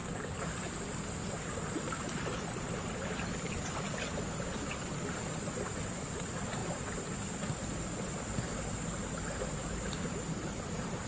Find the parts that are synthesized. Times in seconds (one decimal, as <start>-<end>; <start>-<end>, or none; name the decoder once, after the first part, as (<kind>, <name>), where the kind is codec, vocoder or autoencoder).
none